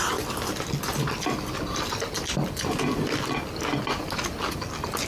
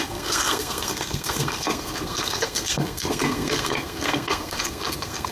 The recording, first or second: first